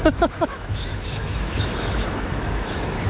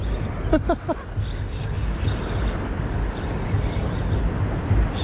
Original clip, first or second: second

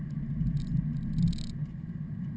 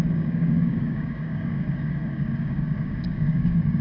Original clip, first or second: first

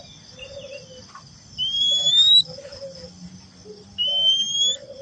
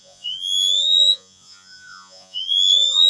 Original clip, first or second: first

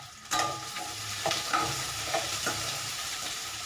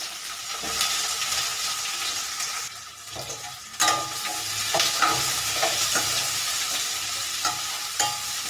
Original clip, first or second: second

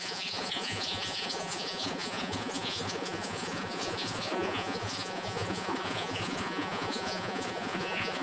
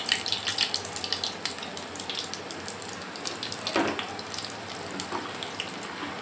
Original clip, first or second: second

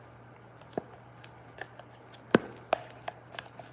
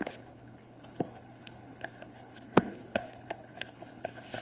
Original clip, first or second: first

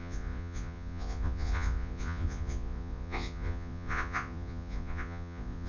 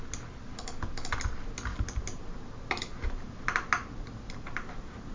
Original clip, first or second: second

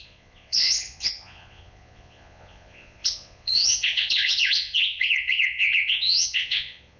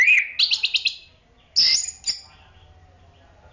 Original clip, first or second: second